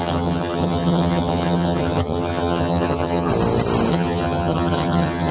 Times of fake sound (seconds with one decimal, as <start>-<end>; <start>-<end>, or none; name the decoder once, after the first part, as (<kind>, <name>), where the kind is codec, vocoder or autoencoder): 0.0-3.3 (vocoder, HiFi-GAN); 3.9-5.3